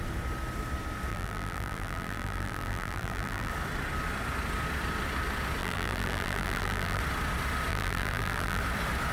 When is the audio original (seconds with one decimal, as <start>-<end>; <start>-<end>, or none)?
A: 0.0-1.1; 3.5-5.6; 7.0-7.7; 8.6-9.1